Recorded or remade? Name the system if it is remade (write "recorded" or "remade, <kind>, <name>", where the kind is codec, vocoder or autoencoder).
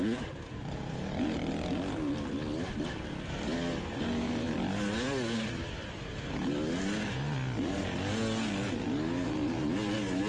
recorded